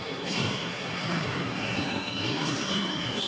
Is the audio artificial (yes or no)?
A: yes